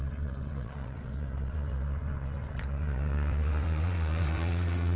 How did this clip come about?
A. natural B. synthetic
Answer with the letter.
B